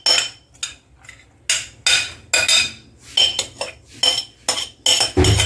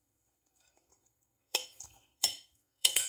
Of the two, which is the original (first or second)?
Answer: first